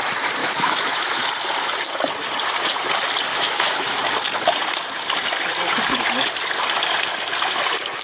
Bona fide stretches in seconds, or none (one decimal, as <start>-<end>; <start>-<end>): 0.0-0.4; 1.3-3.3; 4.0-8.0